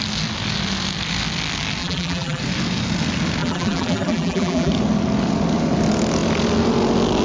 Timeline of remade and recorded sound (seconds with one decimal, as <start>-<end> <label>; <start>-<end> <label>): 0.0-1.8 recorded; 1.8-2.4 remade; 2.4-3.4 recorded; 3.4-4.7 remade; 4.7-7.2 recorded